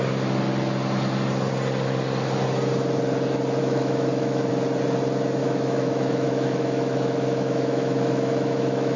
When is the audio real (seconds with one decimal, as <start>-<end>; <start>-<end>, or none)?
0.0-3.6; 4.5-5.4